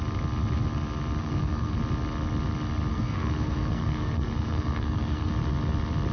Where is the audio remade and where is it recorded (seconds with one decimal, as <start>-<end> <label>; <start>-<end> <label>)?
0.0-1.2 recorded; 1.2-1.8 remade; 1.8-2.9 recorded; 2.9-5.3 remade; 5.3-6.1 recorded